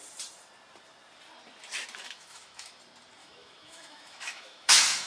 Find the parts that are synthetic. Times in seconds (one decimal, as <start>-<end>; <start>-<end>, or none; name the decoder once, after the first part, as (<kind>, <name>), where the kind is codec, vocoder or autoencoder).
2.0-2.7 (autoencoder, DAC-VAE); 3.2-5.1